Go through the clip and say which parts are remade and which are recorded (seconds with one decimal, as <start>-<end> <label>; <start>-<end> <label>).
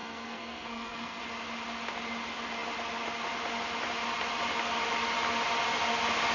0.0-1.2 remade; 1.2-6.3 recorded